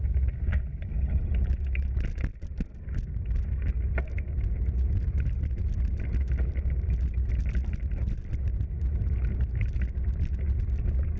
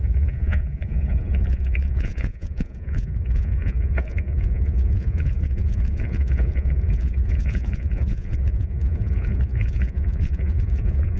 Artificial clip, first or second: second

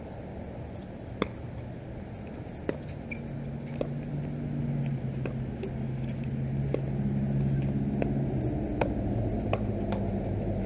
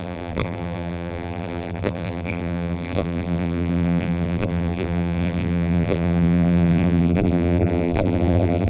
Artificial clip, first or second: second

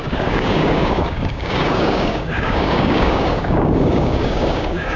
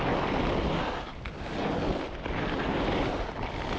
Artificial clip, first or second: first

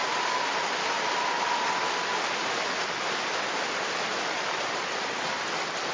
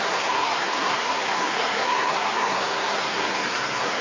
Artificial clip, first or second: second